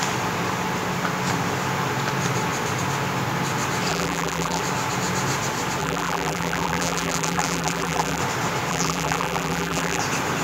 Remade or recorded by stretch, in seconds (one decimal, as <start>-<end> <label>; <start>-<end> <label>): 0.0-3.9 recorded; 3.9-4.6 remade; 4.6-5.8 recorded; 5.8-8.2 remade; 8.2-8.7 recorded; 8.7-10.0 remade; 10.0-10.4 recorded